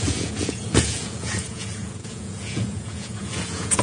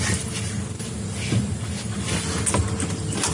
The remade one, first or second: first